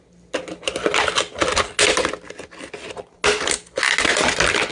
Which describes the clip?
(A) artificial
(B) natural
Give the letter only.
B